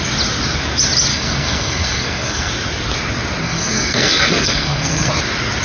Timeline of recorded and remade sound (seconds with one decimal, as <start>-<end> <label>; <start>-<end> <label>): 0.0-1.1 recorded; 1.1-2.5 remade; 2.5-3.4 recorded; 3.4-5.1 remade; 5.1-5.6 recorded